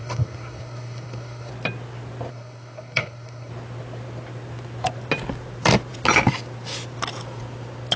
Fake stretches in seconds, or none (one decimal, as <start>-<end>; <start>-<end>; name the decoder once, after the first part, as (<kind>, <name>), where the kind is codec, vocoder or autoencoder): 0.0-1.5 (codec, SNAC); 2.3-3.5